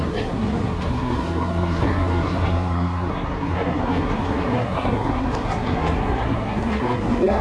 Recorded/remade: remade